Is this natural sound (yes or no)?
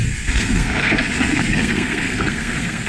no